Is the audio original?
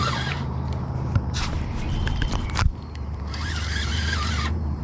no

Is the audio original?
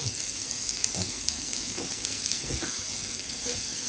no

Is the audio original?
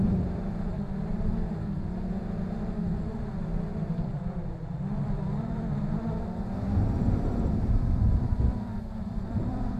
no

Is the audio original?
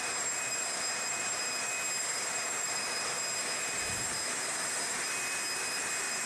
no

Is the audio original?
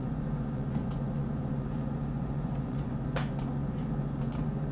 no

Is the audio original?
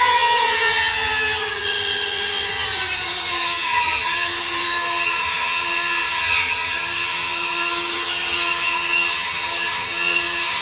no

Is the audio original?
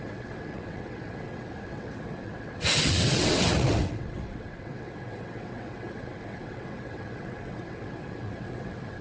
no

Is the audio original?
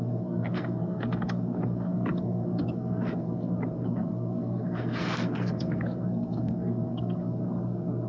no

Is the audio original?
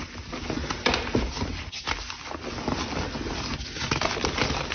yes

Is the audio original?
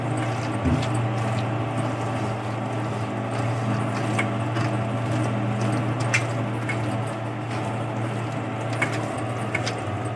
yes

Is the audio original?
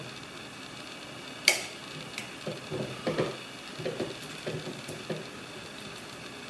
yes